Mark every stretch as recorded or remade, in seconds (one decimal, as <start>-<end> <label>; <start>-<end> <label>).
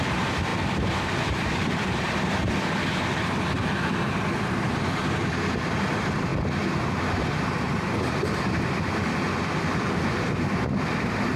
0.0-6.3 remade; 6.3-7.7 recorded; 7.7-11.4 remade